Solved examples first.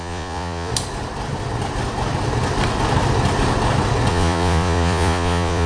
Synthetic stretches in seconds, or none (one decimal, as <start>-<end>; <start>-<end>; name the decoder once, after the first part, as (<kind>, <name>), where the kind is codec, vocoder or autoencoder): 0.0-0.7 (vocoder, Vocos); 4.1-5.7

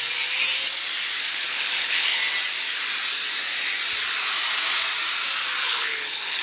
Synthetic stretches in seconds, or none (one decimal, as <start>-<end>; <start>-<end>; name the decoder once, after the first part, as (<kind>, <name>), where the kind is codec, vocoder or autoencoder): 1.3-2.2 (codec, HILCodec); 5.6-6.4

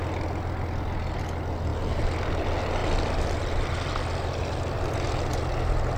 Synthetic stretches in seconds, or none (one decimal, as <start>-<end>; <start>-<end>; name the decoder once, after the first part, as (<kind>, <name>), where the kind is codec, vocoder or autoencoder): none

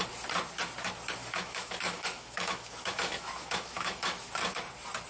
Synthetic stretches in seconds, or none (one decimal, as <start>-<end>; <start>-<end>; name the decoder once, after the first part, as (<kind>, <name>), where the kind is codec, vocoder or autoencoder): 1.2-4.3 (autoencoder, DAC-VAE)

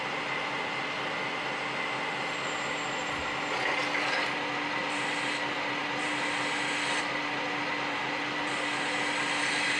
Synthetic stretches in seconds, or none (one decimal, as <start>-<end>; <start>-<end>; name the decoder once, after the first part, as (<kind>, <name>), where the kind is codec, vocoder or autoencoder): none

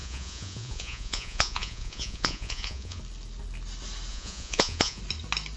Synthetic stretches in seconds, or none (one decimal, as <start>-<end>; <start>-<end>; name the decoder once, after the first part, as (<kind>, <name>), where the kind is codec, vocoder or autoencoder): 0.0-3.0 (vocoder, Vocos); 4.1-5.0

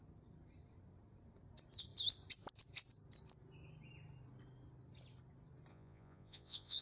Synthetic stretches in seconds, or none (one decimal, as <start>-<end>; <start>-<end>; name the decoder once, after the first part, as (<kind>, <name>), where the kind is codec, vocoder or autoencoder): 5.7-6.8 (vocoder, Vocos)

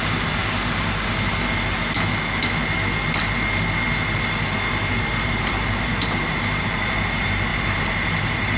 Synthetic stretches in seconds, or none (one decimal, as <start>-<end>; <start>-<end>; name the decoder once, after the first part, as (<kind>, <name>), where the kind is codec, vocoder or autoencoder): 0.0-0.4 (vocoder, BigVGAN v2); 4.9-8.6